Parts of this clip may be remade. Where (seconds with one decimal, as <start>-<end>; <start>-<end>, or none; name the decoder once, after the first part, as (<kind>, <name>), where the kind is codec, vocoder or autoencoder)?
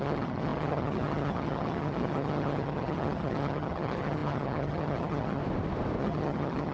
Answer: 0.0-5.4 (vocoder, HiFi-GAN); 6.0-6.7